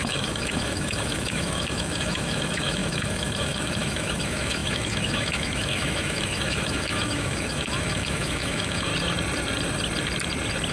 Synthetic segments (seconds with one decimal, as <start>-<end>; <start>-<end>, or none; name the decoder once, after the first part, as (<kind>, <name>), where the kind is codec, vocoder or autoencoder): 0.0-8.9 (autoencoder, DAC-VAE)